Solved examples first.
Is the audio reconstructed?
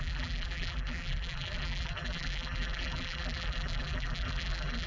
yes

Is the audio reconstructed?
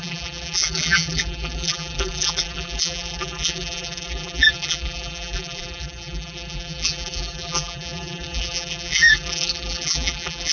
yes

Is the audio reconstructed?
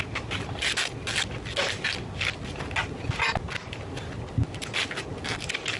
no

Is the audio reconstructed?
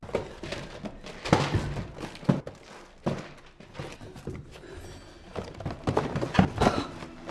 no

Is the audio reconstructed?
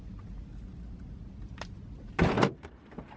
no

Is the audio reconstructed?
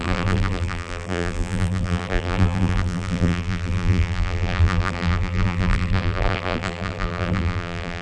yes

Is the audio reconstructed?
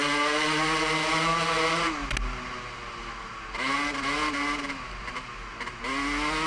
no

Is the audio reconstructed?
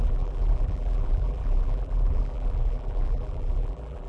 yes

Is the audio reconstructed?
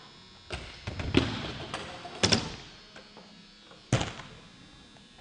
no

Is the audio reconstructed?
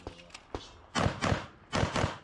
no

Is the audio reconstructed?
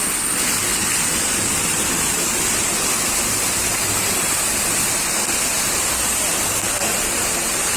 no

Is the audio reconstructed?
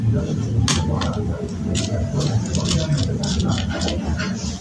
no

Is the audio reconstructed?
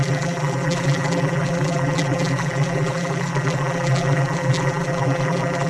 yes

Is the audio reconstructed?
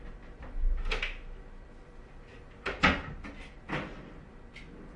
no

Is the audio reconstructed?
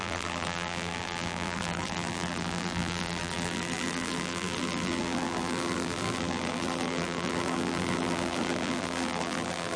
yes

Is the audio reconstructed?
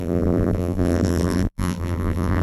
yes